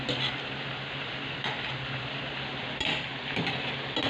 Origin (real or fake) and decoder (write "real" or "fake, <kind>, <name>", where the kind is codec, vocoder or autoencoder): real